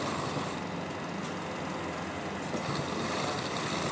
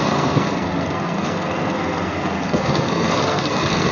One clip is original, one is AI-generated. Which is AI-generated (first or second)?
second